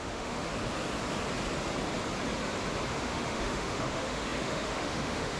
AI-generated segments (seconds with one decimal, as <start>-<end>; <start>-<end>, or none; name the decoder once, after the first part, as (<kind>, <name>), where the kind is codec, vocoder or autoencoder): 0.0-0.5 (autoencoder, DAC-VAE); 2.9-5.4